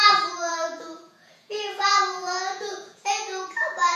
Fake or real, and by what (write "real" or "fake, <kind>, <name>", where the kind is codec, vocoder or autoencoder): fake, vocoder, Vocos